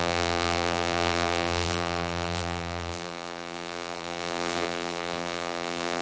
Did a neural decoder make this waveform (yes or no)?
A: yes